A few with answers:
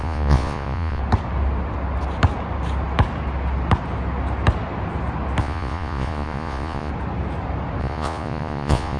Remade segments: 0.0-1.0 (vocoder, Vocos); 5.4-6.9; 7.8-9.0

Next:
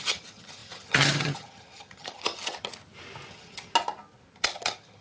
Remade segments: 0.0-2.7 (vocoder, HiFi-GAN); 3.3-3.7; 4.4-5.0

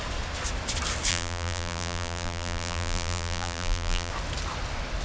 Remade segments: 1.1-4.1 (vocoder, BigVGAN v2)

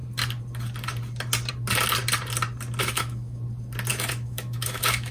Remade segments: 2.8-3.4 (autoencoder, DAC-VAE); 3.9-5.1

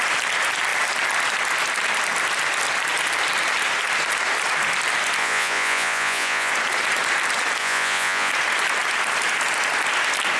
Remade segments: 5.2-6.5 (vocoder, Vocos); 7.6-8.3

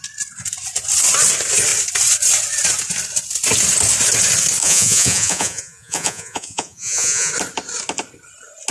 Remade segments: 4.6-7.3 (vocoder, Vocos)

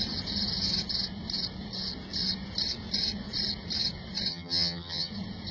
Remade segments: 4.3-5.1 (vocoder, HiFi-GAN)